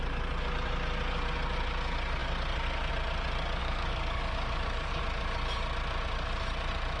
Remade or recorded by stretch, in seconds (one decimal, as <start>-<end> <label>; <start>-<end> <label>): 0.0-3.6 recorded; 3.6-5.0 remade; 5.0-7.0 recorded